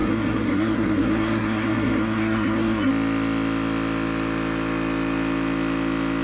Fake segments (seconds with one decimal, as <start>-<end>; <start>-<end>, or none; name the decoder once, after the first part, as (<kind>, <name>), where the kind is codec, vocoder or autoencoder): 0.0-2.9 (codec, SNAC)